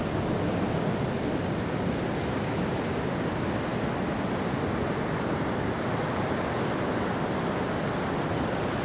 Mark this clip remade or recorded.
recorded